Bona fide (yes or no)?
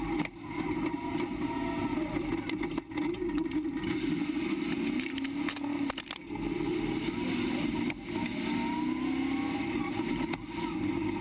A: yes